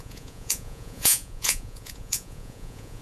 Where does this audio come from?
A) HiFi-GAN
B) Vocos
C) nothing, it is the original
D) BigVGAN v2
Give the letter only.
B